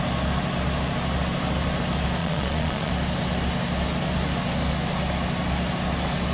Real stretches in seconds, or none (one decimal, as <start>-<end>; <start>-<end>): 0.0-2.2; 2.9-6.3